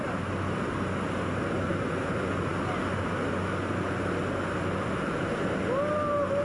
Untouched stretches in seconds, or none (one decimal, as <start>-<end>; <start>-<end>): 0.0-6.4